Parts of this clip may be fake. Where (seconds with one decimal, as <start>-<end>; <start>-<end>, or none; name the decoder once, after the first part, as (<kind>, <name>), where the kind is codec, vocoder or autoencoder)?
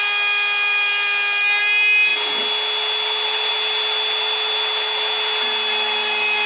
none